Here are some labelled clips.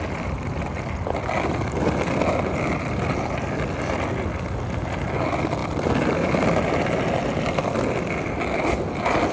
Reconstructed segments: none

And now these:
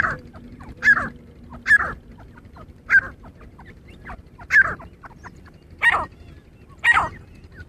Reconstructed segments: 0.0-7.7 (vocoder, BigVGAN v2)

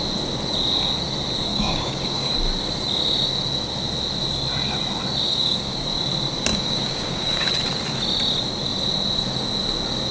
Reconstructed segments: 1.5-2.3 (codec, DAC); 5.3-5.8; 6.5-7.5

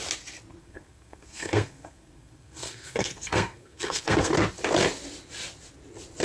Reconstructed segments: 0.6-4.3 (codec, SNAC)

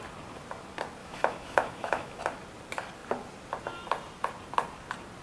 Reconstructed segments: 1.0-2.2 (autoencoder, DAC-VAE)

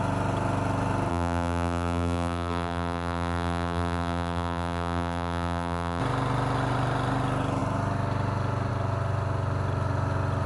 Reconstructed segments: 1.1-6.0 (vocoder, BigVGAN v2)